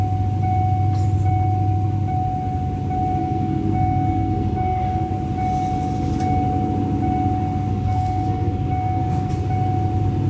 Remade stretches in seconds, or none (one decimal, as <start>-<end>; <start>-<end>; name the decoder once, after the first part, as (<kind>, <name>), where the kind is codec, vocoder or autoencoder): 3.2-5.1 (codec, SNAC); 7.7-9.3